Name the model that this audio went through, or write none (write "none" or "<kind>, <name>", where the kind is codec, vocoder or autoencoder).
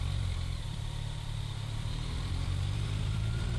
vocoder, BigVGAN v2